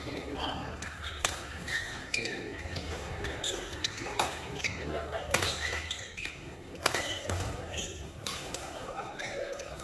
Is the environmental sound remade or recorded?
remade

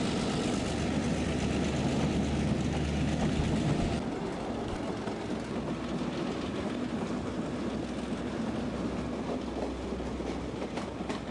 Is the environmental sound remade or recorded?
recorded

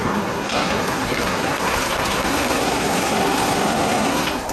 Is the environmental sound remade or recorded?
remade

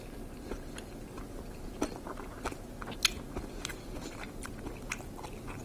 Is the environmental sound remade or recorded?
recorded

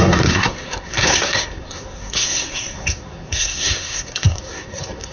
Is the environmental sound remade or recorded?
remade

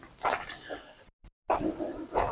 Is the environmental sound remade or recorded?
recorded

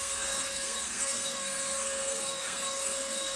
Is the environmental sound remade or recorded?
remade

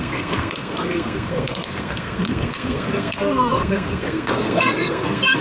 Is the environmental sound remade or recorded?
remade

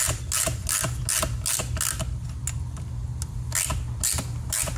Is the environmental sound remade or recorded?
recorded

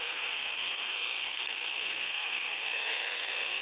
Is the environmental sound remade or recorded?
remade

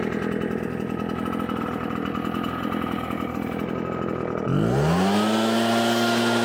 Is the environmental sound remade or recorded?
recorded